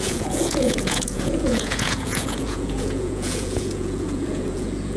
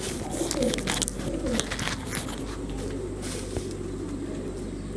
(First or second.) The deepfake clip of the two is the first